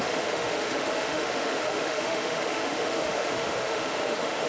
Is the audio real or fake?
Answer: fake